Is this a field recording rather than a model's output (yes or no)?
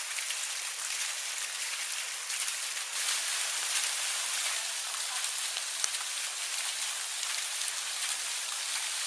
yes